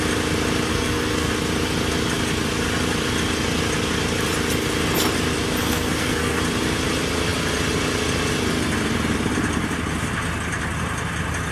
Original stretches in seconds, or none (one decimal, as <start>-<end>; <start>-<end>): 0.0-0.7; 1.3-5.6; 6.4-11.5